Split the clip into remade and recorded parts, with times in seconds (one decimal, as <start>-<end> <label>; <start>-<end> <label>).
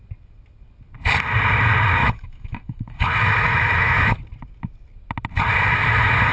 0.0-2.0 recorded; 2.0-4.2 remade; 4.2-6.3 recorded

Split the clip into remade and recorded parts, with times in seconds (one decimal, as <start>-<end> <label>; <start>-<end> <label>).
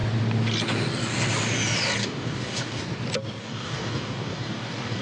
0.0-2.0 recorded; 2.0-2.8 remade; 2.8-3.4 recorded; 3.4-5.0 remade